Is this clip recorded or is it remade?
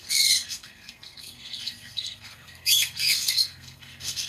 remade